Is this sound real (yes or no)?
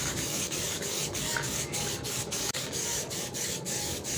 no